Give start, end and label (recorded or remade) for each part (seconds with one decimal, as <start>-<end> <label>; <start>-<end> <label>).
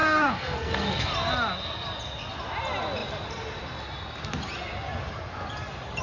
0.0-1.1 remade; 1.1-6.0 recorded